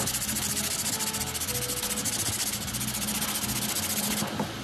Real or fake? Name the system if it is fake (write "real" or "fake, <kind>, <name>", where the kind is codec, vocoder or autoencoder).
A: real